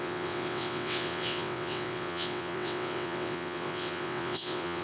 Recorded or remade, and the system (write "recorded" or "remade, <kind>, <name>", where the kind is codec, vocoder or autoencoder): remade, vocoder, WaveNeXt